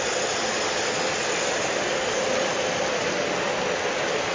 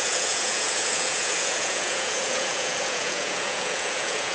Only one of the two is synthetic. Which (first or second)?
second